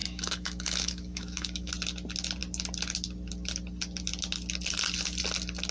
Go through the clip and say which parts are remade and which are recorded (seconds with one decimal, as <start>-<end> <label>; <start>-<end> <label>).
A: 0.0-1.7 remade; 1.7-5.7 recorded